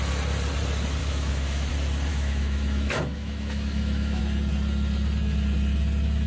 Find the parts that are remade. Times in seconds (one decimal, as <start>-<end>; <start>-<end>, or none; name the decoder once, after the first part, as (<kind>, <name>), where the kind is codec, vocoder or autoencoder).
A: 1.0-1.7 (autoencoder, DAC-VAE); 2.1-4.2